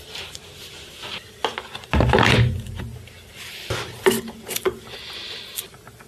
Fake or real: real